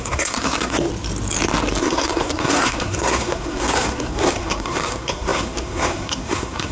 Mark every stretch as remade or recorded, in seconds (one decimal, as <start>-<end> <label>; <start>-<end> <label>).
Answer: 0.0-0.9 remade; 0.9-1.8 recorded; 1.8-6.7 remade

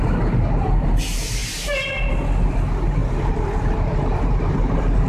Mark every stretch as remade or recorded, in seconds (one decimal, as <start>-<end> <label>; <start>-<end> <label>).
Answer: 0.0-5.1 recorded

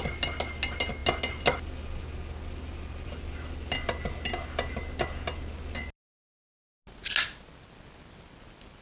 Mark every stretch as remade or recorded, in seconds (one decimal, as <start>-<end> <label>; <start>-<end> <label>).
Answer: 0.0-8.8 recorded

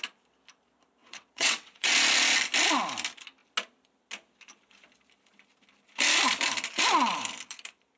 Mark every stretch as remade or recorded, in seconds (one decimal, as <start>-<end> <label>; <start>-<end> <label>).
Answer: 0.0-1.0 recorded; 1.0-1.9 remade; 1.9-8.0 recorded

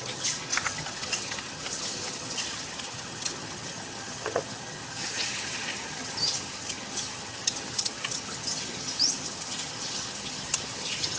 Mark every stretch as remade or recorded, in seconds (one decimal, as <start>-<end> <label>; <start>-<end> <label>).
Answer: 0.0-11.2 remade

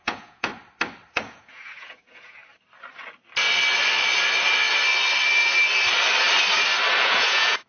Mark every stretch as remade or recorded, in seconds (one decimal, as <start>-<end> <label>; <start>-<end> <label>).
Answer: 0.0-0.5 remade; 0.5-1.1 recorded; 1.1-2.4 remade; 2.4-7.0 recorded; 7.0-7.7 remade